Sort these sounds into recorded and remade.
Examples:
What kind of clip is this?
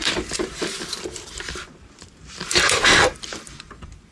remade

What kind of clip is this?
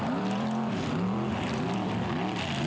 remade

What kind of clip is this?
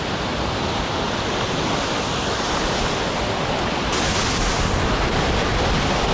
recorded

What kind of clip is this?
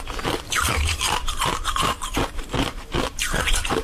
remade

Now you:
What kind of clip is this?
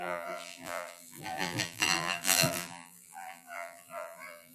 remade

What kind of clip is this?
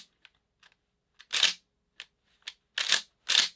recorded